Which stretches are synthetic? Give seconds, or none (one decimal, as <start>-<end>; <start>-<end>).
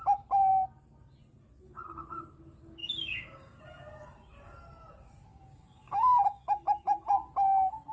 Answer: 2.8-3.6; 5.3-7.1